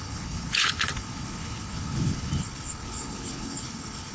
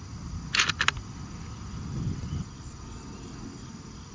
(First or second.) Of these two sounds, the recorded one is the second